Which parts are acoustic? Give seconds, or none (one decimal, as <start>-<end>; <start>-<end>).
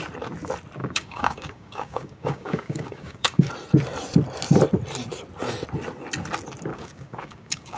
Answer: 0.0-0.8; 3.5-6.7